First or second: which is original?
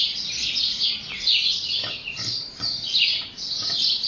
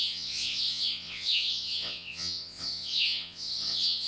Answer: first